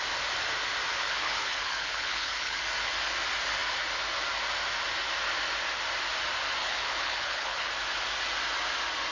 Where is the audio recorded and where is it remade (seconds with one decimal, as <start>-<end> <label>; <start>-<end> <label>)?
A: 0.0-0.9 recorded; 0.9-2.6 remade; 2.6-6.6 recorded; 6.6-7.7 remade; 7.7-9.1 recorded